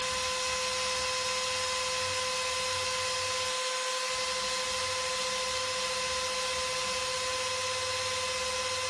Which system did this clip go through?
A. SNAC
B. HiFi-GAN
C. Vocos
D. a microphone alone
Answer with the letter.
D